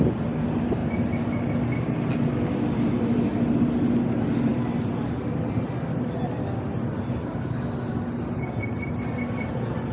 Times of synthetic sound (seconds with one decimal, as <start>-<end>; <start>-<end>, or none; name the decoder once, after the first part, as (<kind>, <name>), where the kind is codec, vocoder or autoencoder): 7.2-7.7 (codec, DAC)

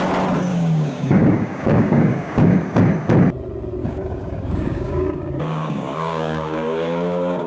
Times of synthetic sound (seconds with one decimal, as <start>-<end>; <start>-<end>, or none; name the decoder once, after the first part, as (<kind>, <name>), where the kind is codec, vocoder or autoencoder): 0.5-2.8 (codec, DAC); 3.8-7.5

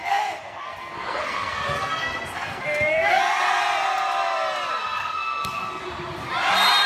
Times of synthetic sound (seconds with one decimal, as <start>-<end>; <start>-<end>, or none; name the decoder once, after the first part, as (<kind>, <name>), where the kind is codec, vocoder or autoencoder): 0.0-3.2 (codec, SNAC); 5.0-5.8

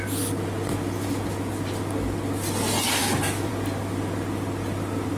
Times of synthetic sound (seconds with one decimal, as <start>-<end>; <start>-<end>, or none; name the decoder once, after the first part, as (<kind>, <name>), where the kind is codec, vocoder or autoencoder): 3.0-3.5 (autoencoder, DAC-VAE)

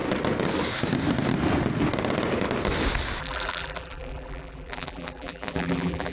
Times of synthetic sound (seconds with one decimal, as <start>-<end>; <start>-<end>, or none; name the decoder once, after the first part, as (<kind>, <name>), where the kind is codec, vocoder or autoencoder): 3.2-6.1 (vocoder, BigVGAN v2)

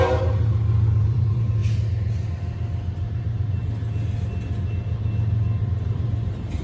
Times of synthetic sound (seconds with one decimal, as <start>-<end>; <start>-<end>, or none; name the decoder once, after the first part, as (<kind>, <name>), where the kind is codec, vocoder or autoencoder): 0.0-0.5 (vocoder, BigVGAN v2); 1.0-1.6; 3.2-3.6; 5.6-6.6